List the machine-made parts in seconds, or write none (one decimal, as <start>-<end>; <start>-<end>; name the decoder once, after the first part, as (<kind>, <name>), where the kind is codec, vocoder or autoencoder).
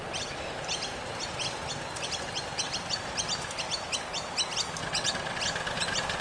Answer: 4.8-5.4 (vocoder, WaveNeXt)